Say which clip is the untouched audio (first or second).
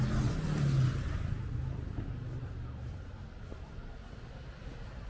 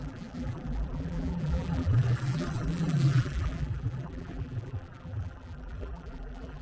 first